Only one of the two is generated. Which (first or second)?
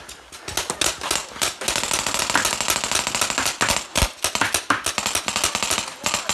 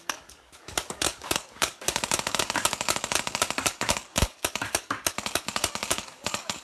second